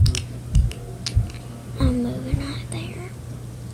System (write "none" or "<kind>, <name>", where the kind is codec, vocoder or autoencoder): none